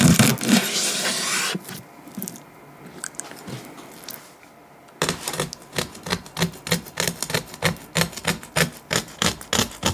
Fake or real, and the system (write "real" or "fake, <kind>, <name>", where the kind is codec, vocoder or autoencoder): real